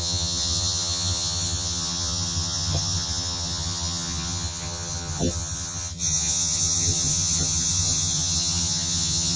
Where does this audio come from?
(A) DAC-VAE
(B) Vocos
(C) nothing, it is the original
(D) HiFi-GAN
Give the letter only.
D